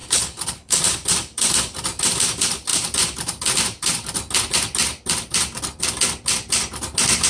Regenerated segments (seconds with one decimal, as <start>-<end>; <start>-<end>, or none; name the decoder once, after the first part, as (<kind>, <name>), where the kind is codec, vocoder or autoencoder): 0.0-0.8 (codec, HILCodec)